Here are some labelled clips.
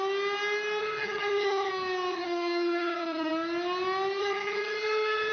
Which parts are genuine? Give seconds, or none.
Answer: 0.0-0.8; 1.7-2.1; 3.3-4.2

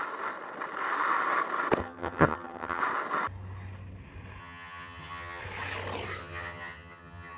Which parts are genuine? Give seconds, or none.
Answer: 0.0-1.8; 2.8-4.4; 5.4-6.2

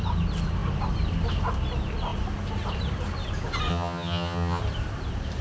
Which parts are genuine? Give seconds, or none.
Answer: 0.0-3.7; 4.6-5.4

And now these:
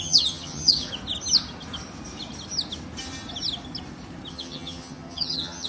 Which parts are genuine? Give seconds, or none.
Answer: 0.9-4.3